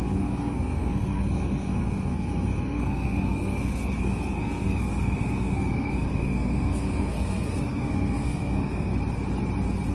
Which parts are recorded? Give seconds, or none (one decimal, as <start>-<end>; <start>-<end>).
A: 8.9-9.9